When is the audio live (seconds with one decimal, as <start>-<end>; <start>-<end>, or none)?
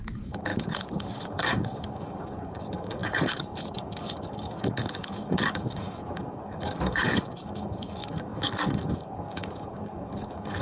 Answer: none